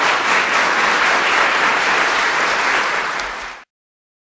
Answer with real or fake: real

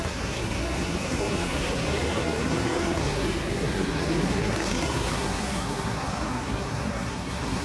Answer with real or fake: fake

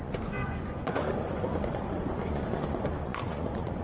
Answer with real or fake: fake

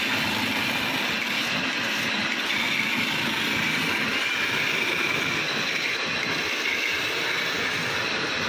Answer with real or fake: real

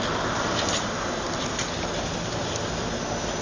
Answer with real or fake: real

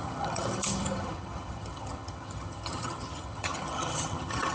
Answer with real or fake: fake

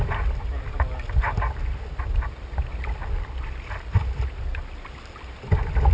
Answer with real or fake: real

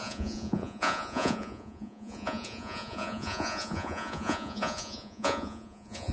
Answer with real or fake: fake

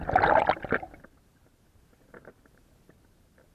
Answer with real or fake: real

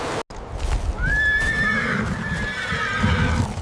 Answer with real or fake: real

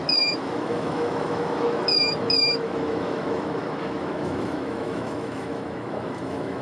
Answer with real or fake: fake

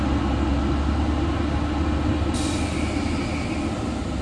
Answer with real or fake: real